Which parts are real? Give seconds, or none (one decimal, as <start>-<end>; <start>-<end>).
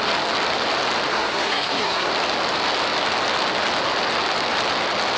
0.0-1.1; 2.1-5.2